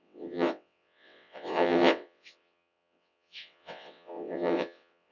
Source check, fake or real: fake